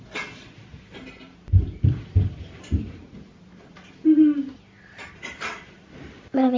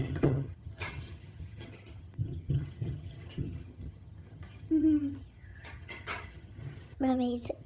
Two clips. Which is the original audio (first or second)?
first